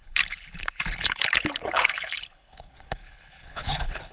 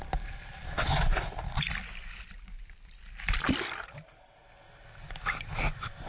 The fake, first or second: first